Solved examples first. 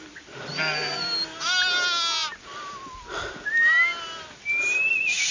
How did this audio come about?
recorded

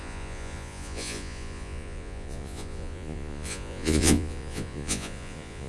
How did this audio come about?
remade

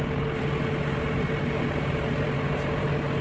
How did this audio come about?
recorded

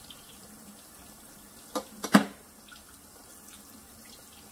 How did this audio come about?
recorded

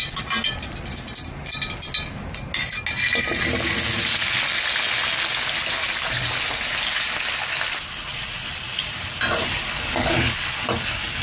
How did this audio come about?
recorded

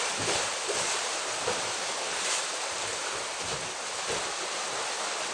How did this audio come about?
recorded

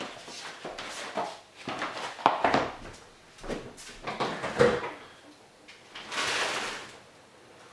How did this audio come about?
recorded